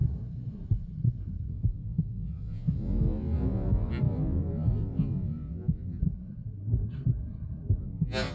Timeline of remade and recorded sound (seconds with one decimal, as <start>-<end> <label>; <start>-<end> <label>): 0.0-1.5 remade; 1.5-6.0 recorded; 6.0-7.8 remade; 7.8-8.3 recorded